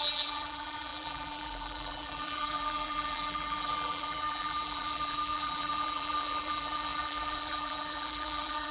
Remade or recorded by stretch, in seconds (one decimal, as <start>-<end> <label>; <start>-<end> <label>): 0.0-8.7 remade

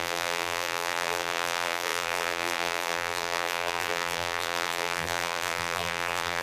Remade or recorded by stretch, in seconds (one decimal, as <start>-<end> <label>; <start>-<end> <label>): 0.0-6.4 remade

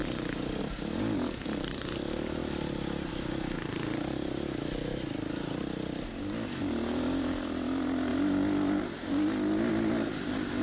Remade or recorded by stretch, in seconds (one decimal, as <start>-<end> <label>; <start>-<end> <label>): 0.0-0.6 remade; 0.6-10.6 recorded